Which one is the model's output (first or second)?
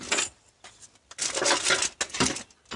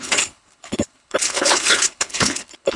second